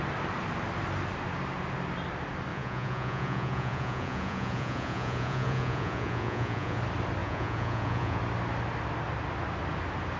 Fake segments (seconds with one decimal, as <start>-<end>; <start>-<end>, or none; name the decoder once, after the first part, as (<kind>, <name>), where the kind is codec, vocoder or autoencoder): 2.5-6.8 (vocoder, Vocos); 7.2-8.2